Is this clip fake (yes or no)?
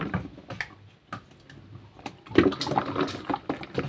no